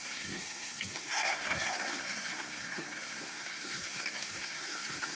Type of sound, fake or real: fake